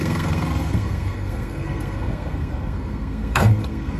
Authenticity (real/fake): fake